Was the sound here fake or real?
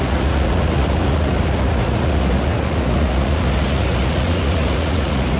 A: fake